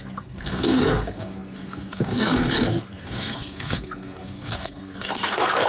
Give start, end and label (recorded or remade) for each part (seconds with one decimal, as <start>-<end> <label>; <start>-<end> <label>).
0.0-5.7 remade